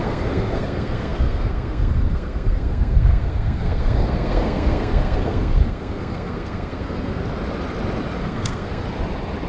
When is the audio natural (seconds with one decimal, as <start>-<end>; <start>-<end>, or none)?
7.2-8.2; 8.8-9.5